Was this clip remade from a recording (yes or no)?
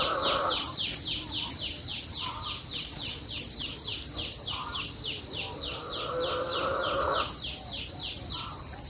no